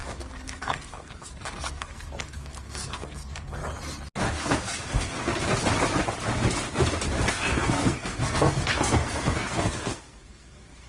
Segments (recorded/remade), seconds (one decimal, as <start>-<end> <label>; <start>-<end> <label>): 0.0-3.6 remade; 3.6-4.2 recorded; 4.2-5.3 remade; 5.3-7.3 recorded; 7.3-10.9 remade